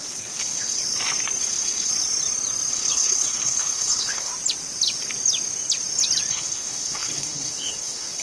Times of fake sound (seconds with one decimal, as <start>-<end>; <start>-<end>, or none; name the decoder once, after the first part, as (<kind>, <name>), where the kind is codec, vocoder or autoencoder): 0.0-0.8 (codec, HILCodec); 1.4-1.9; 2.7-4.3; 6.3-8.2